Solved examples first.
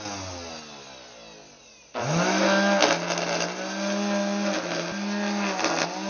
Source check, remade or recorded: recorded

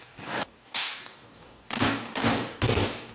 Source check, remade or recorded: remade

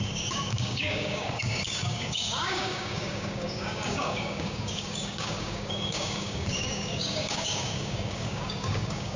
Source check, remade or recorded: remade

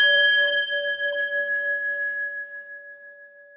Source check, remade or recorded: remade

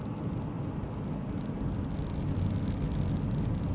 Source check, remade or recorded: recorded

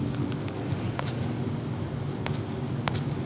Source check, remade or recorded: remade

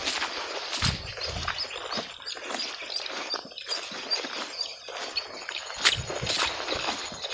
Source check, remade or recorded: recorded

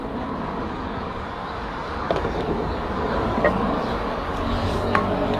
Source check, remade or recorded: remade